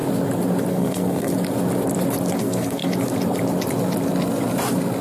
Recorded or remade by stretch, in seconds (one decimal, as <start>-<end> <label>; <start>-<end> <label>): 0.0-0.7 recorded; 0.7-1.3 remade; 1.3-2.4 recorded; 2.4-2.8 remade; 2.8-5.0 recorded